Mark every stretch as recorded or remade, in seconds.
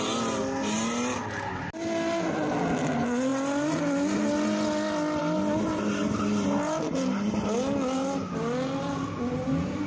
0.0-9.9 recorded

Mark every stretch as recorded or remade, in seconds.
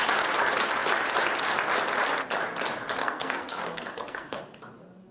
0.0-3.0 recorded; 3.0-4.4 remade; 4.4-5.1 recorded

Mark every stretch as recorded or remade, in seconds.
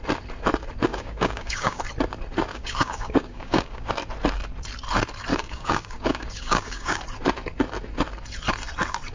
0.0-0.9 recorded; 0.9-1.8 remade; 1.8-2.5 recorded; 2.5-3.9 remade; 3.9-5.3 recorded; 5.3-7.0 remade; 7.0-9.1 recorded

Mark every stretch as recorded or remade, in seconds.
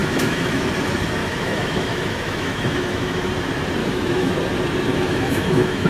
0.0-0.7 remade; 0.7-1.2 recorded; 1.2-3.3 remade; 3.3-3.8 recorded; 3.8-4.3 remade; 4.3-4.9 recorded; 4.9-5.9 remade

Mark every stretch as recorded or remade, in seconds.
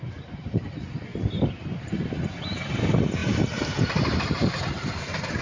0.0-1.1 remade; 1.1-1.8 recorded; 1.8-3.2 remade; 3.2-4.2 recorded; 4.2-5.4 remade